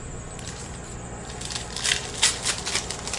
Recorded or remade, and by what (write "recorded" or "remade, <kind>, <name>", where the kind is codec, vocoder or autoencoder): remade, vocoder, BigVGAN v2